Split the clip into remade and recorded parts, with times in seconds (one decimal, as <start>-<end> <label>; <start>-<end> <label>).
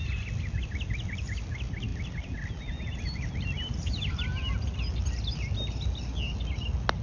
0.0-7.0 recorded